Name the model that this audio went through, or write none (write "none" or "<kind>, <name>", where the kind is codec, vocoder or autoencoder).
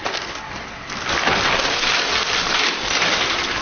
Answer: none